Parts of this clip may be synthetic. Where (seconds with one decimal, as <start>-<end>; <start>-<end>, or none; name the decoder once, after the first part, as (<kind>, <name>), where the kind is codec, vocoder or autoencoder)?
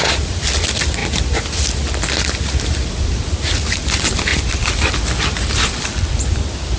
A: none